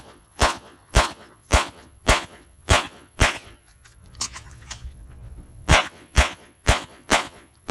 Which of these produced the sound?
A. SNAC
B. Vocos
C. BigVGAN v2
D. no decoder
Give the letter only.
B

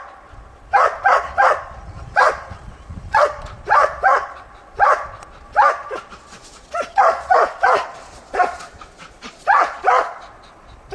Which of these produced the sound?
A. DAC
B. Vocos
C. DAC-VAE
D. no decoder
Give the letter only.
B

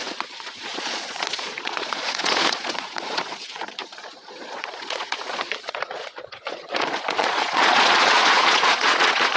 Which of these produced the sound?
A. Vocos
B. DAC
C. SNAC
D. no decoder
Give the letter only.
A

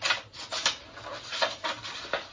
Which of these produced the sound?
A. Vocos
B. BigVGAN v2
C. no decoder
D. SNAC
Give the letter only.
C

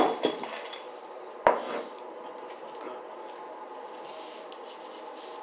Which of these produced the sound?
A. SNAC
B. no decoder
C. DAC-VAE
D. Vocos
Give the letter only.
B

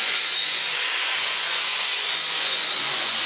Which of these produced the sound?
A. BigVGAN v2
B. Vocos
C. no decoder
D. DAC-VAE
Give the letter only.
B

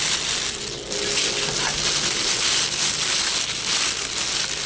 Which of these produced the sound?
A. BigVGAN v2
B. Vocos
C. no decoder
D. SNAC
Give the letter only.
C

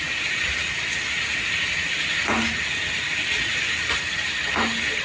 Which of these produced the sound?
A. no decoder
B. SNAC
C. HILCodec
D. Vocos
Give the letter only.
A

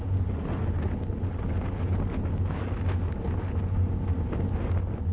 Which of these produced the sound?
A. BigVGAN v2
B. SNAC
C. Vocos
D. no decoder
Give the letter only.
D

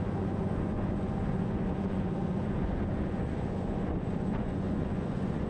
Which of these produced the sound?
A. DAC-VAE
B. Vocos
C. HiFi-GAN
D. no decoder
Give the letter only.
B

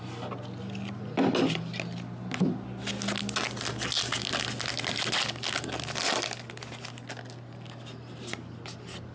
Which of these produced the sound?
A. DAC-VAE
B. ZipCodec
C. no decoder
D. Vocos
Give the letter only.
C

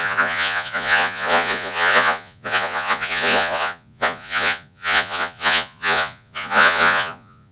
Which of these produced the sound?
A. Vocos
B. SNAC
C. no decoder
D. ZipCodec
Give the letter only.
A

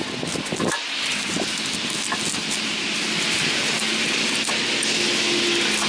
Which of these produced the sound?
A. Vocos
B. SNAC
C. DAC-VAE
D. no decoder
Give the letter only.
D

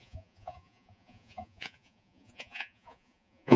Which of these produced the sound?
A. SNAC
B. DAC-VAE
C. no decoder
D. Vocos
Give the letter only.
D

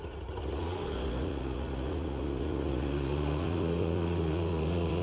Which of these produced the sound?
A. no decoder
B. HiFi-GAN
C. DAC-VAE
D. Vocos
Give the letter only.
D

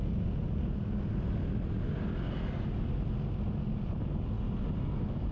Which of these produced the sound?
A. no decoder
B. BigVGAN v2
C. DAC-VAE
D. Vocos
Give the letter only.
A